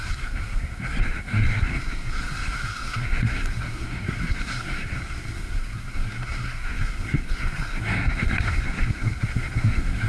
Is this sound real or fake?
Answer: fake